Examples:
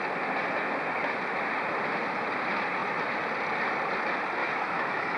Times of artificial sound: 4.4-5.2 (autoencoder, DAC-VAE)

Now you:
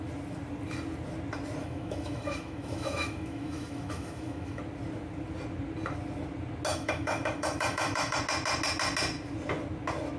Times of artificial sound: 1.6-4.6 (autoencoder, DAC-VAE); 6.7-8.2